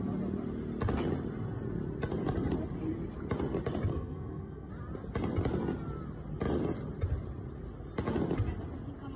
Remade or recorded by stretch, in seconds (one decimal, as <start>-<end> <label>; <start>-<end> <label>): 0.0-3.9 recorded; 3.9-4.7 remade; 4.7-9.2 recorded